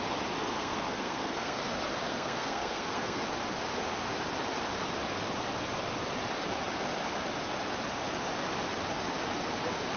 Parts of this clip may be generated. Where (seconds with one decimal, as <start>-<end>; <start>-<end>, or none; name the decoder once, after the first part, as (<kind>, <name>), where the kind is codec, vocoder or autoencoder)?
0.5-1.6 (codec, SNAC); 2.1-3.2